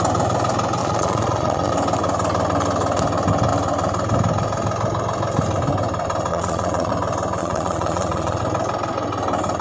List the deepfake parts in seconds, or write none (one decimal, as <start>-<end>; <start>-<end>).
0.8-1.7; 6.3-6.9; 7.4-8.4

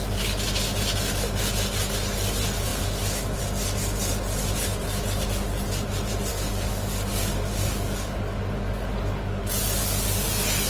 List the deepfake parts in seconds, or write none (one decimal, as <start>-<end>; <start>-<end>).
6.3-9.5

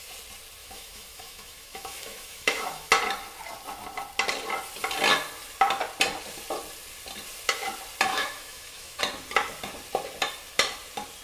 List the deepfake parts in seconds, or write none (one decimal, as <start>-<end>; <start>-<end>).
0.6-2.9; 8.1-9.0

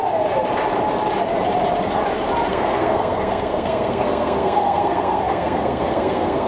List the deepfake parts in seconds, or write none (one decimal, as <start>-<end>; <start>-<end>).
2.5-6.5

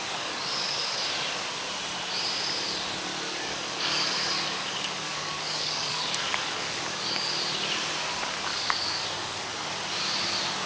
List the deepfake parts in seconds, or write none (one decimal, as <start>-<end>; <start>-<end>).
0.0-1.0; 3.1-7.3; 8.5-9.7

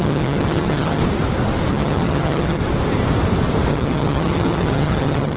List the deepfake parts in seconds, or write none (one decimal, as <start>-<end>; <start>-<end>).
0.0-1.0; 1.7-2.6; 3.7-5.4

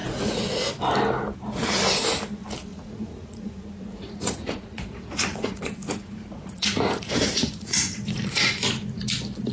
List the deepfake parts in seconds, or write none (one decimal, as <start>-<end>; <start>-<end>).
0.0-0.7; 2.7-3.6; 4.0-9.0